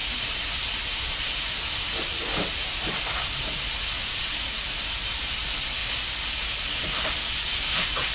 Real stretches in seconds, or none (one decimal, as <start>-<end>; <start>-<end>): 5.8-7.3